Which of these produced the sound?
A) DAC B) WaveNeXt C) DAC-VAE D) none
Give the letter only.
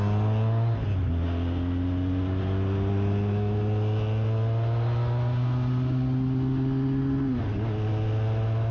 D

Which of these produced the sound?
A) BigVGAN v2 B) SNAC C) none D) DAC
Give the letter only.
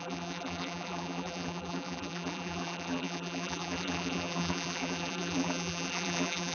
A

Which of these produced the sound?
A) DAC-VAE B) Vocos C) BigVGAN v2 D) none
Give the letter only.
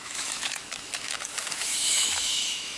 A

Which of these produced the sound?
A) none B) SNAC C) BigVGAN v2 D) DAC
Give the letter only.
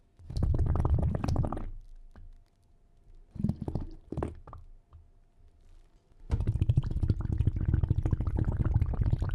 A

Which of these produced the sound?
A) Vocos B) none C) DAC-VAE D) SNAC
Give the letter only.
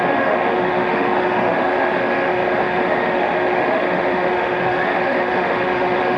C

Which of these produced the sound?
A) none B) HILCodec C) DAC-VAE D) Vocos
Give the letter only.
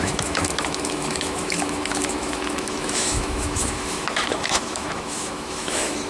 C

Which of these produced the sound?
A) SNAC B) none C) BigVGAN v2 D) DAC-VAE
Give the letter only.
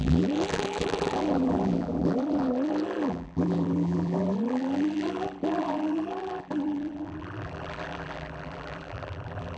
C